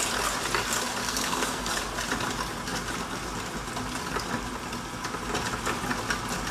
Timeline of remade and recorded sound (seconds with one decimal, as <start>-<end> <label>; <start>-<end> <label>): 0.0-1.0 recorded; 1.0-1.7 remade; 1.7-6.5 recorded